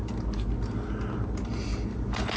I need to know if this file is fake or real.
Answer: real